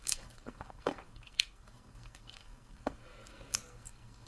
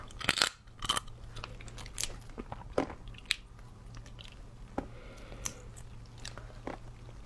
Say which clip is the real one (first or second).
second